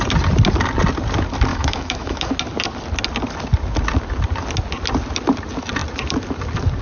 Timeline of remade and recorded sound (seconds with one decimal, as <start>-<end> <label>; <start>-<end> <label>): 0.0-1.5 recorded; 1.5-2.3 remade; 2.3-6.8 recorded